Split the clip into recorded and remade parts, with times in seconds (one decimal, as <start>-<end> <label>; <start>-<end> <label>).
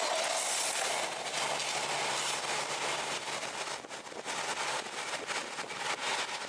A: 0.0-6.5 recorded